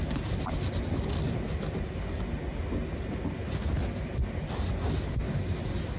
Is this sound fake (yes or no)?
no